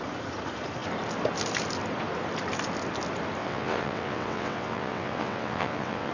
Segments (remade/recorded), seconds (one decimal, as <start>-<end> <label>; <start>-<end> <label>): 0.0-3.4 recorded; 3.4-6.1 remade